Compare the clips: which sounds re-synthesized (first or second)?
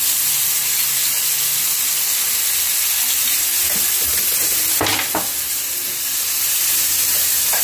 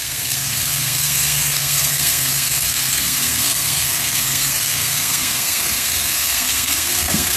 second